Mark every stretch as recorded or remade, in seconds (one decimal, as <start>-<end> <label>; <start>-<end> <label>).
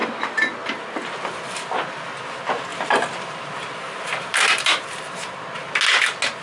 0.0-2.7 recorded; 2.7-5.7 remade; 5.7-6.4 recorded